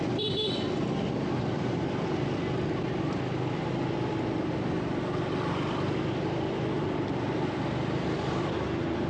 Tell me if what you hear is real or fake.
real